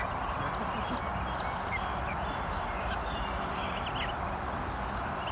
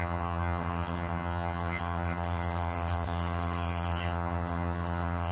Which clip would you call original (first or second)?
first